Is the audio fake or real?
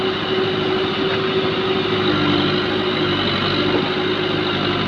real